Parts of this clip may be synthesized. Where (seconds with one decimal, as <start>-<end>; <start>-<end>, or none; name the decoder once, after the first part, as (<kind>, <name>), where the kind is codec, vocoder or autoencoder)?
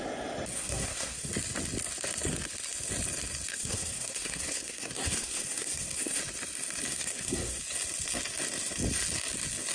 0.5-1.3 (codec, SNAC); 3.5-6.2; 6.9-7.6